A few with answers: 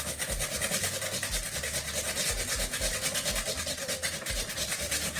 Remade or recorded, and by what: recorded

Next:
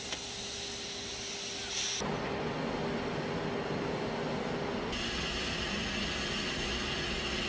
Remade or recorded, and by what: recorded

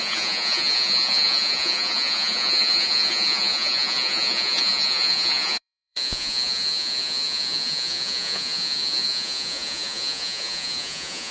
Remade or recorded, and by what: remade, vocoder, Vocos